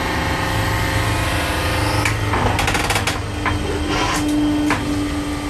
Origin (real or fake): real